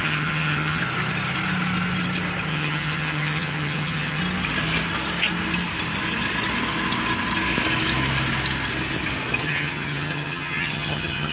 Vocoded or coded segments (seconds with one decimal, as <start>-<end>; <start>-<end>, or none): 0.0-0.8; 2.5-4.2; 9.4-11.3